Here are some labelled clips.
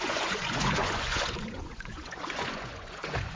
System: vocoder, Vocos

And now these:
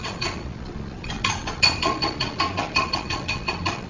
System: vocoder, Vocos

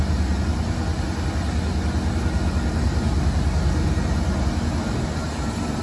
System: none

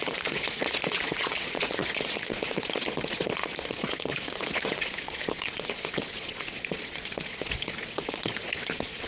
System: vocoder, Vocos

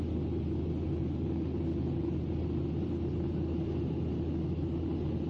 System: none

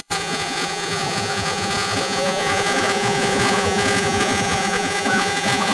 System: vocoder, Vocos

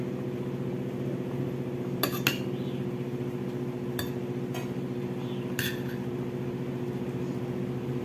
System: none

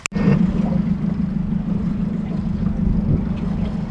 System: none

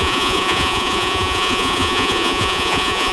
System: vocoder, Vocos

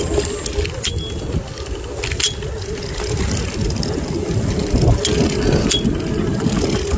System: none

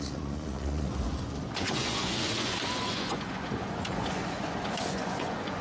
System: vocoder, Vocos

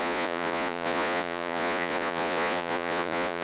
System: vocoder, Vocos